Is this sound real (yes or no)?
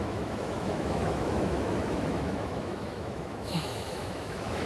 no